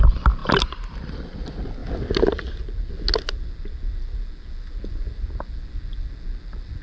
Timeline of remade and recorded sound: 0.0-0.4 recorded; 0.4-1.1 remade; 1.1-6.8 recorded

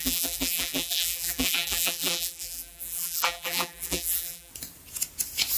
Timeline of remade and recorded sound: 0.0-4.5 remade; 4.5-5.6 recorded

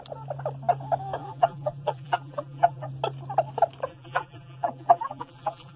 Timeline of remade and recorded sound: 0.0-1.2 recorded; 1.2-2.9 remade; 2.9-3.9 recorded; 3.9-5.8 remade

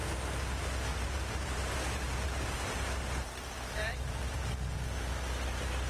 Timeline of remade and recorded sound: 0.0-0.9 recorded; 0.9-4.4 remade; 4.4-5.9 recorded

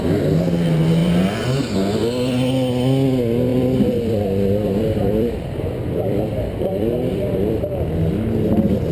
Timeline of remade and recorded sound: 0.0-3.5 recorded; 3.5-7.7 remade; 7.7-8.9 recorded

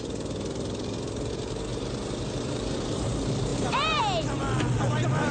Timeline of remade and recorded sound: 0.0-1.7 recorded; 1.7-3.1 remade; 3.1-3.5 recorded; 3.5-4.0 remade; 4.0-5.3 recorded